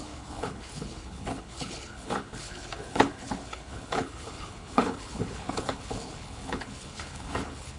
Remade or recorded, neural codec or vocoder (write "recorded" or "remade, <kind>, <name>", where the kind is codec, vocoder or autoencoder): remade, codec, HILCodec